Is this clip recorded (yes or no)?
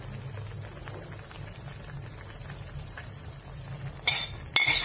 yes